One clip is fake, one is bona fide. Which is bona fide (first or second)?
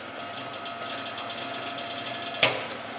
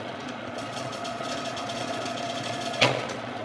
first